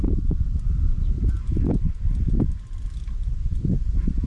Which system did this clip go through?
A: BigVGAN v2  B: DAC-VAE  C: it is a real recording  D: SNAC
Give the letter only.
C